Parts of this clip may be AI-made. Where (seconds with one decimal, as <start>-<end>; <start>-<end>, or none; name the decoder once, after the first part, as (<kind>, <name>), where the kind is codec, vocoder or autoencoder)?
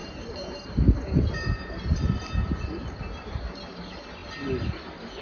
0.0-3.1 (vocoder, BigVGAN v2)